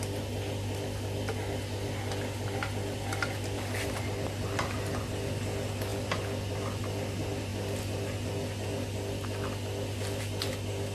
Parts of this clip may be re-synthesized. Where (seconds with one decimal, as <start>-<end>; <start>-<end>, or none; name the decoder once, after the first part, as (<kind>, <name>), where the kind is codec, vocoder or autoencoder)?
none